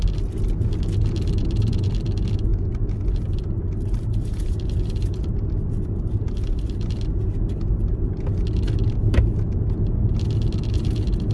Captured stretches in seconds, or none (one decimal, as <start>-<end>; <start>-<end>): 0.0-1.4; 1.9-11.3